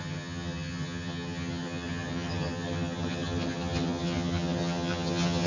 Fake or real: fake